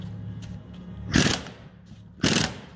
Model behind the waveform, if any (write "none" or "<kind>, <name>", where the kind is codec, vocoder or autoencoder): none